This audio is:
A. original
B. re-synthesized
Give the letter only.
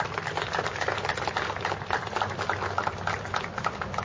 A